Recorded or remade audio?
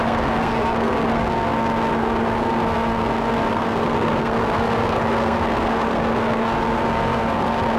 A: remade